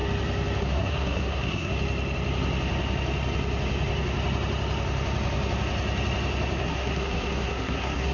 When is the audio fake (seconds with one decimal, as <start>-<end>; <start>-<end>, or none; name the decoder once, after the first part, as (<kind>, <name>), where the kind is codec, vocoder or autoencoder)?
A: 0.6-1.7 (codec, SNAC); 6.6-8.1